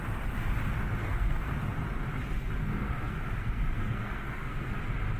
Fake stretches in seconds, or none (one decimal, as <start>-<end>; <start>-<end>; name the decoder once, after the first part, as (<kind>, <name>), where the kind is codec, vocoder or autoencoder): 1.0-1.6 (codec, SNAC); 2.6-4.8